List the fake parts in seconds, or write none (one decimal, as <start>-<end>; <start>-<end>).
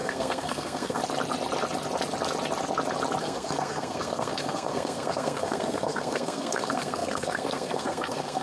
0.0-1.0; 3.2-8.4